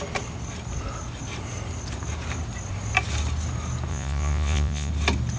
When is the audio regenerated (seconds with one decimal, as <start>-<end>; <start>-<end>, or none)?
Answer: 3.9-4.9